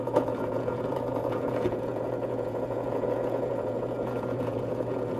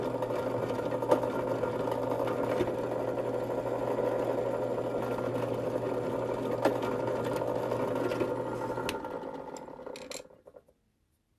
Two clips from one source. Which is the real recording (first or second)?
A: second